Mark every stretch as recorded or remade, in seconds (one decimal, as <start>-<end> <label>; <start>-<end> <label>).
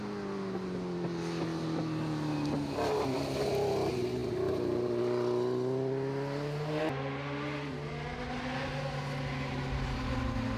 0.0-10.6 recorded